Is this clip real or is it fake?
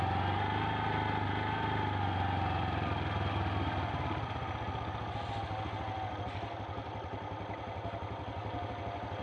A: real